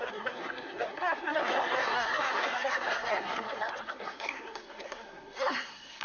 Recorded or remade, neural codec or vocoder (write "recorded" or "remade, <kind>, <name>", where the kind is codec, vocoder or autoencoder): remade, codec, SNAC